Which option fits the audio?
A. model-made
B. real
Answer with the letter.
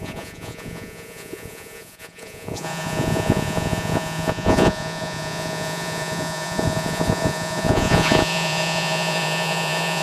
A